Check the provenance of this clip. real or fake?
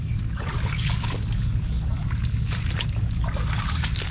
fake